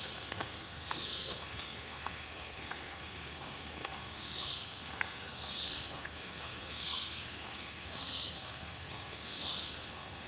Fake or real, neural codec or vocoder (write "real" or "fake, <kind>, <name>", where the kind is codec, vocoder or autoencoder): fake, codec, SNAC